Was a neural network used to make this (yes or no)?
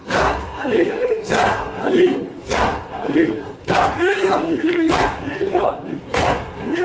yes